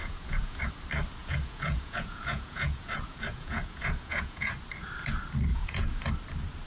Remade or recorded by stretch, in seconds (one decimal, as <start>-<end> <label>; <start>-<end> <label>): 0.0-0.7 remade; 0.7-1.2 recorded; 1.2-4.5 remade; 4.5-5.5 recorded; 5.5-6.1 remade; 6.1-6.7 recorded